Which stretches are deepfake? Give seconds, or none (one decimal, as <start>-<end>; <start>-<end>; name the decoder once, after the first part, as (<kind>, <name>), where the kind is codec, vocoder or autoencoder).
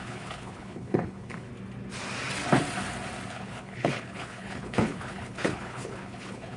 0.0-1.5 (codec, HILCodec); 3.3-6.6